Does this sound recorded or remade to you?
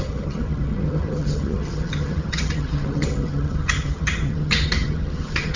remade